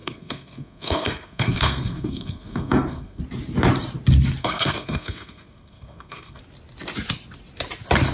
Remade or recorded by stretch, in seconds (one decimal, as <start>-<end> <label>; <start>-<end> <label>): 0.0-3.2 remade; 3.2-4.4 recorded; 4.4-6.4 remade; 6.4-8.1 recorded